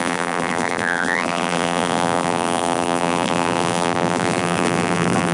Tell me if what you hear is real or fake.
fake